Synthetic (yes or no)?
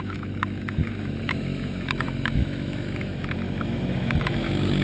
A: yes